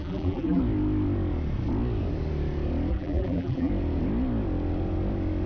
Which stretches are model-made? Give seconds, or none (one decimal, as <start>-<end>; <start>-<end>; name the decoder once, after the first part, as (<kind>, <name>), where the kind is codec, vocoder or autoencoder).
0.0-0.6 (vocoder, BigVGAN v2); 2.9-3.7